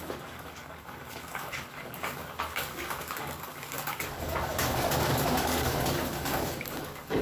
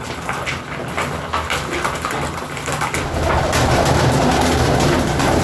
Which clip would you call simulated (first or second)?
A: first